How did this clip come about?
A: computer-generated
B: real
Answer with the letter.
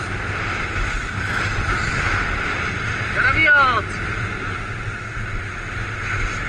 B